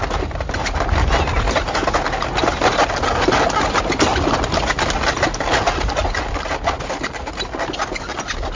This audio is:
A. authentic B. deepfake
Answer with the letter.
A